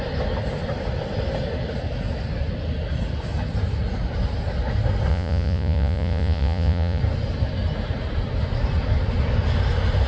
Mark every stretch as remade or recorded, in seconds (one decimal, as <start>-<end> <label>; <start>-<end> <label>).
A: 0.0-5.1 recorded; 5.1-7.0 remade; 7.0-10.1 recorded